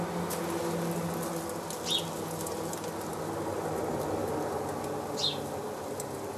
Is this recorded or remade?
recorded